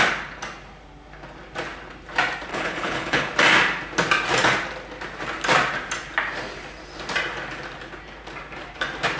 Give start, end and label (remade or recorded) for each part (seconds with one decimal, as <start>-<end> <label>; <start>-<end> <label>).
0.0-2.5 recorded; 2.5-3.3 remade; 3.3-9.2 recorded